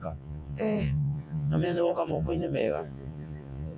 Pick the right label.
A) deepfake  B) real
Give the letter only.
A